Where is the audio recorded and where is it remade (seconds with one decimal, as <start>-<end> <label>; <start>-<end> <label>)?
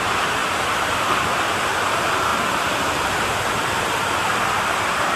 0.0-0.4 remade; 0.4-1.8 recorded; 1.8-5.2 remade